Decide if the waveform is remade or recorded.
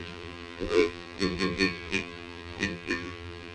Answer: remade